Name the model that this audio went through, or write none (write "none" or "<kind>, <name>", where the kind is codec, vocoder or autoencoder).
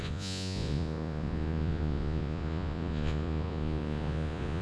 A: vocoder, Vocos